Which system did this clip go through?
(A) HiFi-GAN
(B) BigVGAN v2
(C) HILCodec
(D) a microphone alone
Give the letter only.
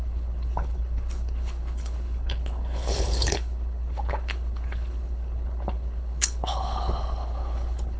C